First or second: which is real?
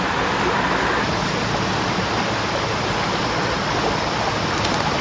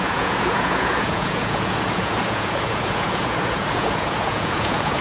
first